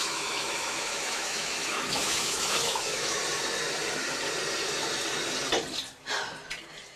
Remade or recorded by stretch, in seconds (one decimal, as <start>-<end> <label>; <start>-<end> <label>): 0.0-3.2 remade; 3.2-7.0 recorded